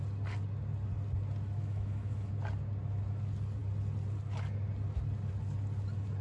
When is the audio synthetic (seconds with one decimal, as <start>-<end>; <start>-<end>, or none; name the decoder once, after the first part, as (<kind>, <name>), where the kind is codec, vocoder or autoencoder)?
1.6-2.3 (autoencoder, DAC-VAE)

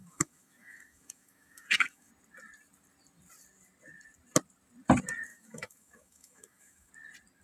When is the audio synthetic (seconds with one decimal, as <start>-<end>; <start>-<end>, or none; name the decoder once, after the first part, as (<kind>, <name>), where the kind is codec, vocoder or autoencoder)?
0.0-2.1 (autoencoder, DAC-VAE); 5.3-6.9

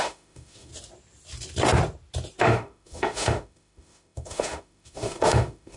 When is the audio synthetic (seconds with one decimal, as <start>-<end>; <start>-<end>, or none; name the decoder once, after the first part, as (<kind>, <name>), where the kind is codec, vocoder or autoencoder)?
0.0-0.7 (autoencoder, DAC-VAE); 2.4-5.8

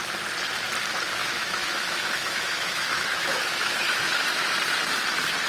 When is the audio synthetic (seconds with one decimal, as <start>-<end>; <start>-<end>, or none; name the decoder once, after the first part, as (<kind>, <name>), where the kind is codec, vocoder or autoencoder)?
1.2-4.5 (autoencoder, DAC-VAE)

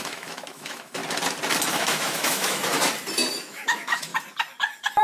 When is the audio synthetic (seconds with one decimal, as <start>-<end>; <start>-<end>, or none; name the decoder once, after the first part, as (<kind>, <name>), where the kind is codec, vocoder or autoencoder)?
0.0-1.0 (autoencoder, DAC-VAE); 1.7-2.6; 3.4-4.1

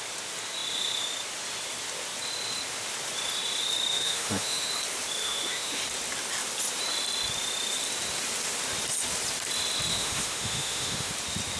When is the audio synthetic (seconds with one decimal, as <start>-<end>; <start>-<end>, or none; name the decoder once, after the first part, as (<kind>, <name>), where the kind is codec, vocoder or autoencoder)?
3.9-4.7 (autoencoder, DAC-VAE); 5.2-5.8; 9.9-11.1

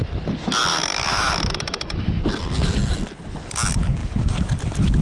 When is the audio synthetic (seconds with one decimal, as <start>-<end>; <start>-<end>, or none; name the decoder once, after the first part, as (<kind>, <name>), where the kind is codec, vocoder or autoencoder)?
0.7-2.2 (autoencoder, DAC-VAE)

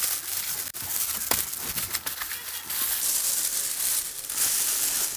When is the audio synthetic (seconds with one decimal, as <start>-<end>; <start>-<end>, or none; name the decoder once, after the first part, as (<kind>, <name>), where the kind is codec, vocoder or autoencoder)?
none